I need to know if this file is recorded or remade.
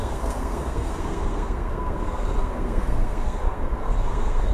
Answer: remade